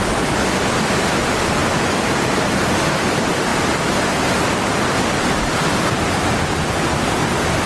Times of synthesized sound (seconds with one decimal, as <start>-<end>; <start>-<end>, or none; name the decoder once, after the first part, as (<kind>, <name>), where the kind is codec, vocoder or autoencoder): none